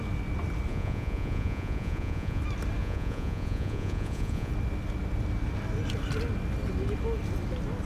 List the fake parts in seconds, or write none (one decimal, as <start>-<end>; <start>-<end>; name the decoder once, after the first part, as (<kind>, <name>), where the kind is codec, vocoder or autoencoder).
0.7-2.4 (vocoder, Vocos); 2.8-4.5

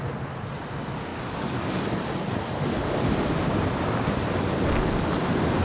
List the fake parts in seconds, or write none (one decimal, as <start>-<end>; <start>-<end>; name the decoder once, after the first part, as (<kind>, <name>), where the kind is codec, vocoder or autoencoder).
1.1-4.5 (vocoder, BigVGAN v2)